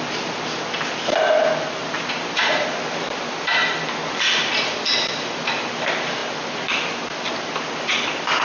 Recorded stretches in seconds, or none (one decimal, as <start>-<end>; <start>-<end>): 0.0-8.4